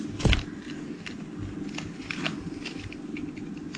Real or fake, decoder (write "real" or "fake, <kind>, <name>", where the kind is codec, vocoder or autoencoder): real